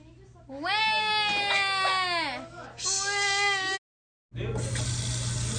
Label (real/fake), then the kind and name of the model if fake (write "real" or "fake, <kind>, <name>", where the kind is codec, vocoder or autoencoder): real